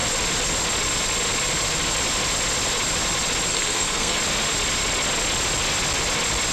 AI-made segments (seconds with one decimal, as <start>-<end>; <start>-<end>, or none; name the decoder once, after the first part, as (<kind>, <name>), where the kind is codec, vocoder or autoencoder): 3.5-4.2 (codec, SNAC)